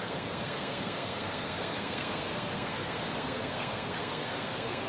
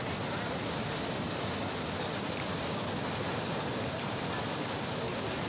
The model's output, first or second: first